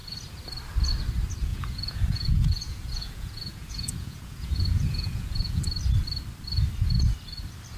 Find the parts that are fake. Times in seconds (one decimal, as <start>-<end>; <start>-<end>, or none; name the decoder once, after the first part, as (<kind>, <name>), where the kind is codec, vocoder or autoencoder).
1.5-5.6 (vocoder, Vocos)